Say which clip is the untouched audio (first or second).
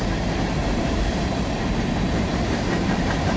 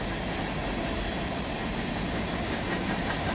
second